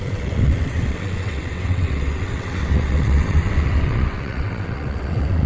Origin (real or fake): fake